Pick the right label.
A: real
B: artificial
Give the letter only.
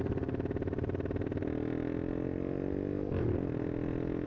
A